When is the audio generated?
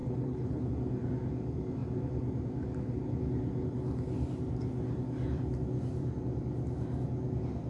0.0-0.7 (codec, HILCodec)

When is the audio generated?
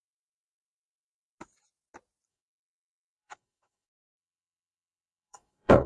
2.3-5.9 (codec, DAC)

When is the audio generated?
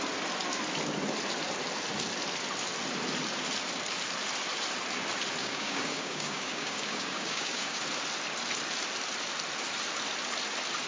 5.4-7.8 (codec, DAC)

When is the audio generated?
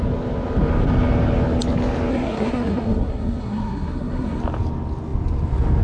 2.1-4.4 (codec, SNAC)